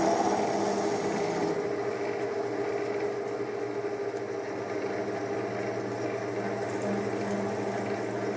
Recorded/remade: recorded